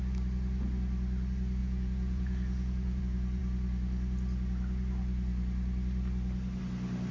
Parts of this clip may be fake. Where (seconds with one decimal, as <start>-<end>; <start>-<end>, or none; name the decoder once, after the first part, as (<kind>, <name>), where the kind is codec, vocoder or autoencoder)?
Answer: 1.6-3.0 (vocoder, Vocos)